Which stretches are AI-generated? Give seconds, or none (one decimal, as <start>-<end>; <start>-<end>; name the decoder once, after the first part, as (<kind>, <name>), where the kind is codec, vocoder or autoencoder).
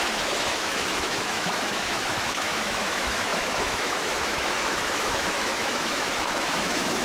0.0-7.0 (autoencoder, DAC-VAE)